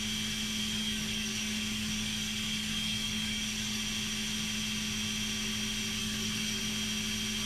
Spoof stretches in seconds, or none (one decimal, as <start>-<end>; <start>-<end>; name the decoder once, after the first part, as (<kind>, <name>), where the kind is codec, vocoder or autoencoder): 0.6-3.8 (codec, DAC); 6.0-6.6

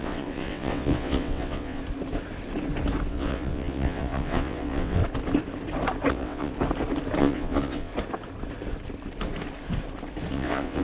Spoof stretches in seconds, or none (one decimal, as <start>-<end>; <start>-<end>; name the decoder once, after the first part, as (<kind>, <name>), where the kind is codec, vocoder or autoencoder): 0.0-1.8 (vocoder, WaveNeXt); 3.1-5.0; 6.1-6.5; 7.2-7.9; 10.3-10.8

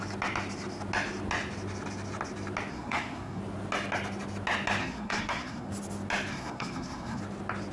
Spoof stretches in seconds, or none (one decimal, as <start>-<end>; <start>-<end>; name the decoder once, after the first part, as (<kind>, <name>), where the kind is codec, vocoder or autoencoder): 2.7-3.4 (codec, SNAC); 4.8-5.7; 6.3-7.2

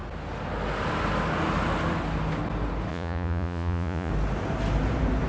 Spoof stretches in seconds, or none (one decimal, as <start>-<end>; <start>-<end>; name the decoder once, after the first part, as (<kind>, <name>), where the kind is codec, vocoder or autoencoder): 2.9-4.1 (vocoder, Vocos)

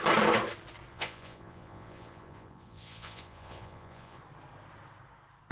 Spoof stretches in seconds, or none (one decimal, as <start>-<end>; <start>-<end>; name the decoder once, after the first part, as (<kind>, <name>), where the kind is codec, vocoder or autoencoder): 0.9-4.2 (vocoder, Vocos)

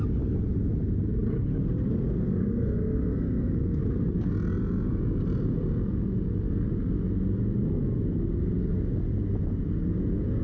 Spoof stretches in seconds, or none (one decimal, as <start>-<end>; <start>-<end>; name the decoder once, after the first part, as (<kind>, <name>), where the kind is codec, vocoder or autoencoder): 2.4-3.8 (codec, SNAC)

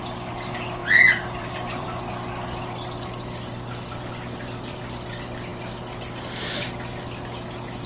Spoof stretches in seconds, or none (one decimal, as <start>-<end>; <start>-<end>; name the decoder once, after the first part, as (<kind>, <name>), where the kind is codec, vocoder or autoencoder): 0.8-4.8 (vocoder, BigVGAN v2)

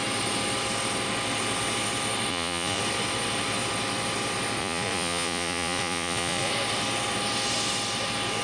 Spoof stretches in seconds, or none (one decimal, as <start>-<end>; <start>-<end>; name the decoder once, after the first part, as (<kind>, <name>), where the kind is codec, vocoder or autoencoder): 2.3-2.8 (vocoder, Vocos); 4.6-6.5